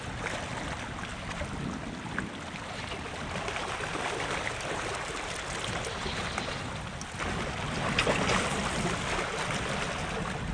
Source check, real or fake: real